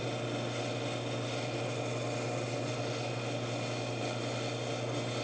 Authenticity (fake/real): real